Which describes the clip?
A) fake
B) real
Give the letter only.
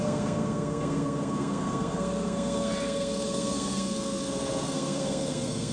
A